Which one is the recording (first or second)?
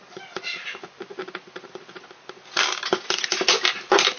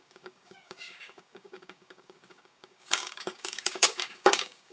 first